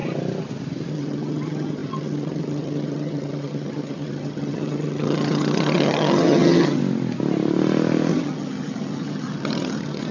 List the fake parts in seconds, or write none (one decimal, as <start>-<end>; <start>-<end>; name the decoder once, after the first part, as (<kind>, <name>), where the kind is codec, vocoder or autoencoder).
0.9-6.8 (vocoder, HiFi-GAN); 8.1-10.1